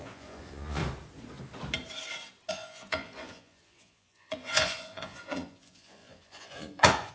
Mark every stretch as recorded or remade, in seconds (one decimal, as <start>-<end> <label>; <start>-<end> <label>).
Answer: 0.0-0.8 remade; 0.8-2.5 recorded; 2.5-7.1 remade